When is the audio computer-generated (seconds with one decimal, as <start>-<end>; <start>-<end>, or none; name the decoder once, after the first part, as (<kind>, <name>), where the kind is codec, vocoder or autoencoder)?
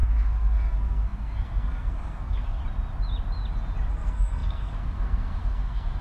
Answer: 0.0-2.6 (codec, SNAC); 3.9-6.0